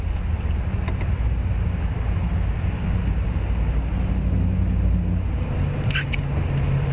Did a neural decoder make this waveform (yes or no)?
no